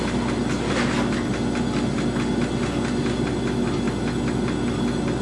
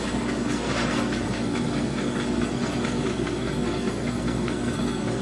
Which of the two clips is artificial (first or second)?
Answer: second